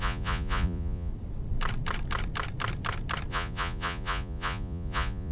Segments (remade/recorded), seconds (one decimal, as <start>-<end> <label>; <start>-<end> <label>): 0.0-1.1 remade; 1.1-3.3 recorded; 3.3-5.3 remade